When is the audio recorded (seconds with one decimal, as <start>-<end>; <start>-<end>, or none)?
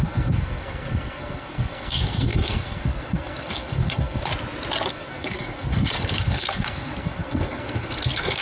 4.3-4.9